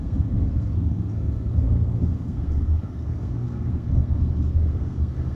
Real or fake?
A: fake